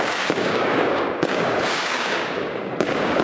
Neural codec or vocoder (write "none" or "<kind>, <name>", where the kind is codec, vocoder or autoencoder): codec, DAC